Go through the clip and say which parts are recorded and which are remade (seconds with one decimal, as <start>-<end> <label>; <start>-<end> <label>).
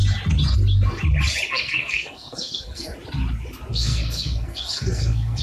0.0-1.5 recorded; 1.5-2.9 remade; 2.9-3.7 recorded; 3.7-5.4 remade